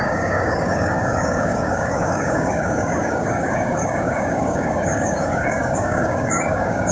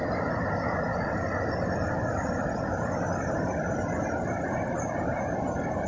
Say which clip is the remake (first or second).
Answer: first